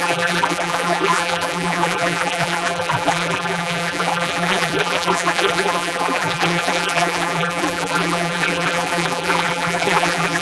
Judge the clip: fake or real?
fake